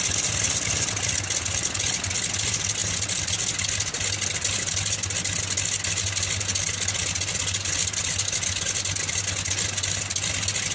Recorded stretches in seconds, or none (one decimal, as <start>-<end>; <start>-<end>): 0.0-10.7